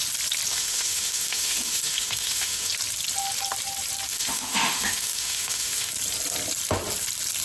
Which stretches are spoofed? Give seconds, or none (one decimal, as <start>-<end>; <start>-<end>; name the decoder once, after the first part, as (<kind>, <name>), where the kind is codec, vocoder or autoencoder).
0.5-2.7 (autoencoder, DAC-VAE); 4.1-5.9